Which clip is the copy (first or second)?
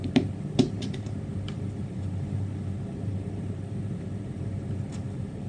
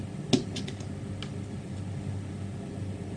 first